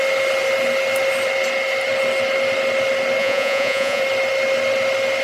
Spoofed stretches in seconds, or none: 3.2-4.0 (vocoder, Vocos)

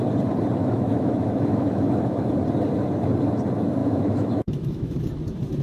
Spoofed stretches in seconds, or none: 0.6-2.3 (autoencoder, DAC-VAE); 3.8-5.0

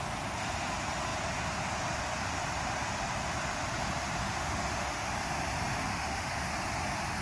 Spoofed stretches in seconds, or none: 4.2-5.1 (autoencoder, DAC-VAE); 5.9-6.5

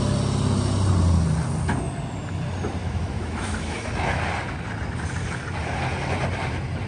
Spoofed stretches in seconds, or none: 2.8-4.2 (autoencoder, DAC-VAE)